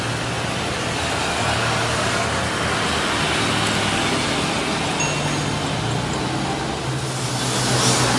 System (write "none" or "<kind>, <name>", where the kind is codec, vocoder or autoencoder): none